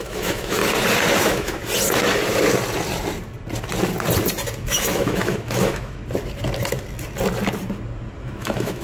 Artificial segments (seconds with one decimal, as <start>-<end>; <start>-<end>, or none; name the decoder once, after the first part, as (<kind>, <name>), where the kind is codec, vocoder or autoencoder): 0.0-0.6 (autoencoder, DAC-VAE); 1.2-1.6; 4.7-6.0; 8.2-8.8